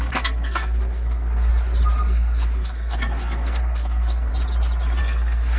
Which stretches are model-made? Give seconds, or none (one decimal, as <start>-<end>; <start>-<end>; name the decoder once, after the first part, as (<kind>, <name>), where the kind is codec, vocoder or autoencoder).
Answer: 0.0-1.5 (codec, SNAC); 2.0-4.3; 5.0-5.6